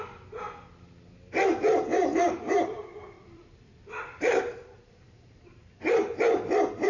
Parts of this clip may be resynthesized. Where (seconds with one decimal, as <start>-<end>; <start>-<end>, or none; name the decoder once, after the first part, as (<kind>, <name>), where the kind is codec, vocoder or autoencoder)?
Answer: 1.9-6.0 (vocoder, BigVGAN v2)